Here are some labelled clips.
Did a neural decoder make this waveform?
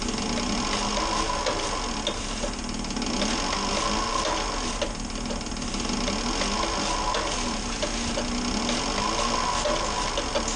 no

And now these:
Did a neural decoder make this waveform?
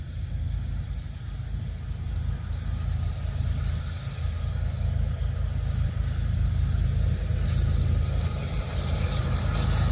no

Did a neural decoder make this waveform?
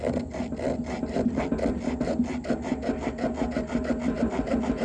no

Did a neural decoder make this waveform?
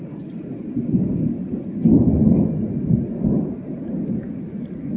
no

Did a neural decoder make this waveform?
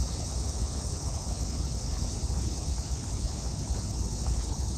yes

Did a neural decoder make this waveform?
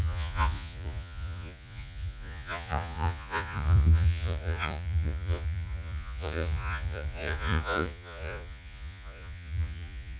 yes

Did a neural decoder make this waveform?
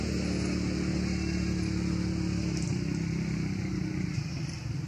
no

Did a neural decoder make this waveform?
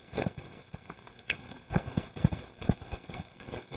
yes